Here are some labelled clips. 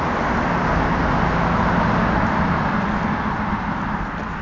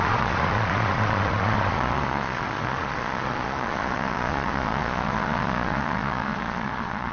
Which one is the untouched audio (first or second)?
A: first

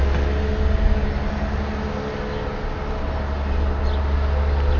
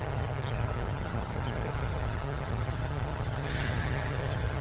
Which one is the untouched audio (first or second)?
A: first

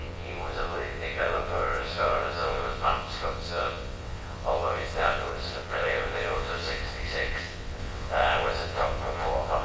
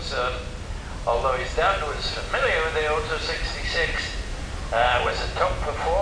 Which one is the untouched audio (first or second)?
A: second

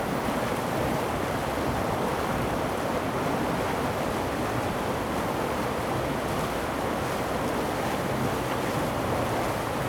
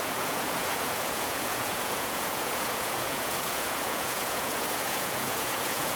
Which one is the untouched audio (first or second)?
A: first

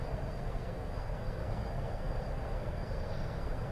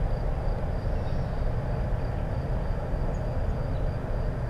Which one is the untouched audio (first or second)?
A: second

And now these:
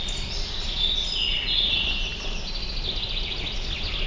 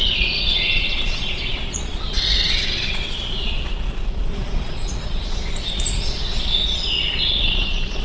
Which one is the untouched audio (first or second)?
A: first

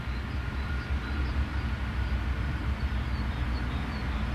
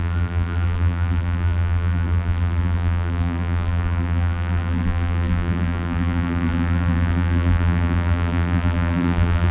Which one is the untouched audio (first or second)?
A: first